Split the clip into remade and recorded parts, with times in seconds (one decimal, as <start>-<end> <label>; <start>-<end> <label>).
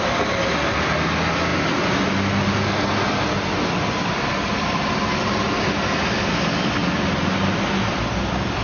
0.0-8.6 recorded